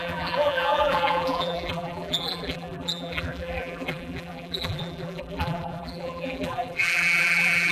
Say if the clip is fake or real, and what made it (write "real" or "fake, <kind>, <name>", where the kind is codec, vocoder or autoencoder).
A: fake, vocoder, BigVGAN v2